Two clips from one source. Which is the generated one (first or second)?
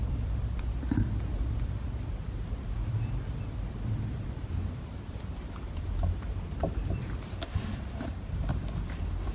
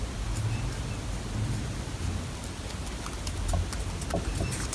first